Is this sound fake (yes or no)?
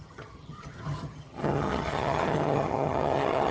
yes